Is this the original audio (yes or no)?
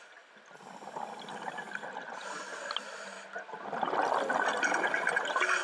yes